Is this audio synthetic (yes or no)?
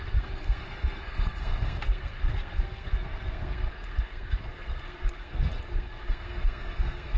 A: yes